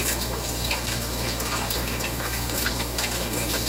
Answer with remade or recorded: remade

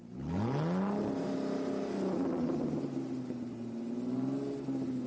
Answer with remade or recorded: recorded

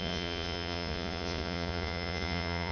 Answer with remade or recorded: remade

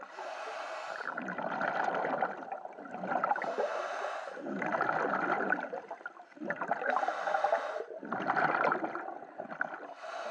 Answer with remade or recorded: recorded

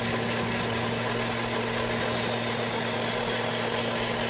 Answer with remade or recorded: recorded